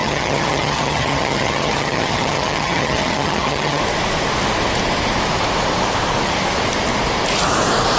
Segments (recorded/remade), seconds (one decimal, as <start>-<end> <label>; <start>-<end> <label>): 0.0-3.8 remade; 3.8-8.0 recorded